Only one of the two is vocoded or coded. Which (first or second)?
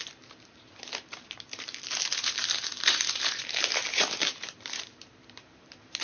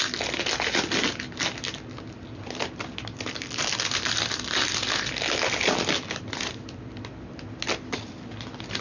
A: first